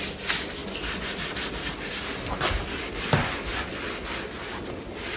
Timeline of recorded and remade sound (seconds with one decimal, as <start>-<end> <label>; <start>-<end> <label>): 0.0-5.2 recorded